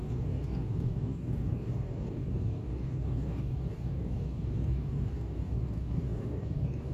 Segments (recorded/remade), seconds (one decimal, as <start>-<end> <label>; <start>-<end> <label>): 0.0-6.9 remade